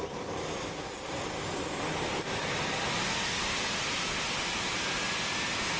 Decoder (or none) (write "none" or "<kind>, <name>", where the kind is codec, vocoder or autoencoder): none